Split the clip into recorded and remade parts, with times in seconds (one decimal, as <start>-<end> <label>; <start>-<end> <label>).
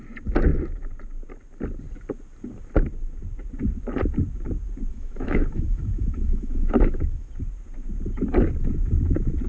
0.0-4.9 recorded; 4.9-7.3 remade; 7.3-9.5 recorded